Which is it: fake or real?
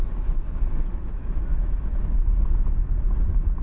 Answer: real